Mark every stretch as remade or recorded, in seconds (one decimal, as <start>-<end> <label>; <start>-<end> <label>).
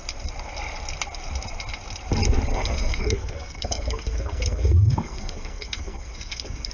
0.0-2.5 recorded; 2.5-6.7 remade